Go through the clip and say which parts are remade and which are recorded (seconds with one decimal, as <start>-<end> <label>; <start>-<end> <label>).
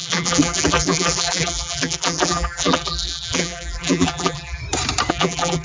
0.0-4.6 remade; 4.6-5.1 recorded; 5.1-5.6 remade